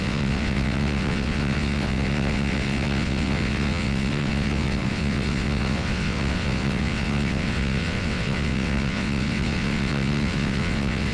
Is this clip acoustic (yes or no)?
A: no